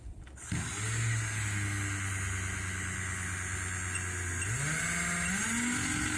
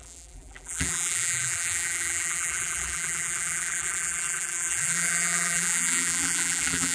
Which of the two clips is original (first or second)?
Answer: first